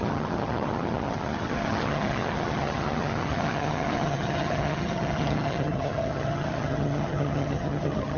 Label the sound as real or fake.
fake